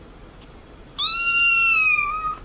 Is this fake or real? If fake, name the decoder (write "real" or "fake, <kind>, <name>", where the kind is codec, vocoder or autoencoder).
real